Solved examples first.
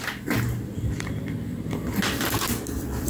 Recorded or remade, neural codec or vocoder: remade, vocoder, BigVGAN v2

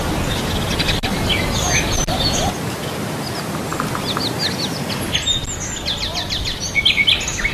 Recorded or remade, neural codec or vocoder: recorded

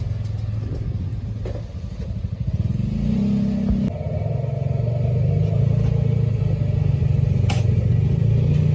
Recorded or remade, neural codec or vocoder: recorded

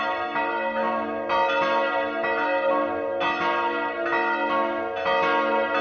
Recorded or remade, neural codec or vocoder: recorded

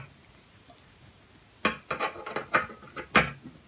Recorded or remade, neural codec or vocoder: recorded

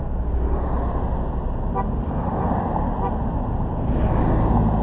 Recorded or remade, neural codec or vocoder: recorded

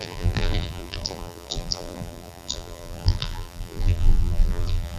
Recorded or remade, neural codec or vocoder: remade, vocoder, BigVGAN v2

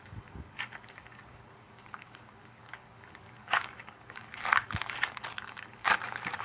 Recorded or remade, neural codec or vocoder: remade, codec, DAC